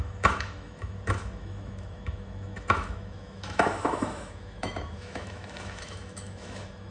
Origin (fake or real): fake